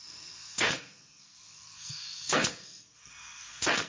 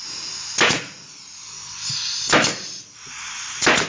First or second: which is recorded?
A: second